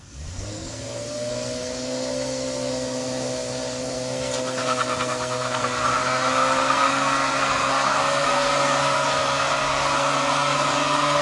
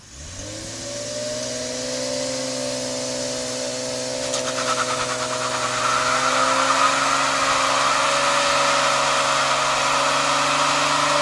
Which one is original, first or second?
second